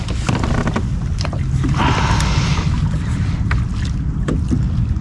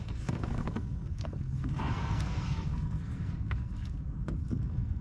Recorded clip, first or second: first